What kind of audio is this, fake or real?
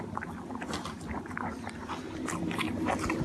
real